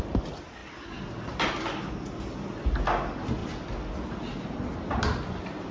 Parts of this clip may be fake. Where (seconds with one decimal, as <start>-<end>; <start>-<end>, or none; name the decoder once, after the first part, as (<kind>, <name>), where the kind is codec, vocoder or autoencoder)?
none